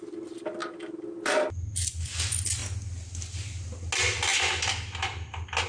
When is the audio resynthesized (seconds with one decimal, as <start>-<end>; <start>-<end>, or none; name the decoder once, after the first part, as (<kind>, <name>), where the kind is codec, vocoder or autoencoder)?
0.0-0.6 (vocoder, BigVGAN v2); 1.8-2.6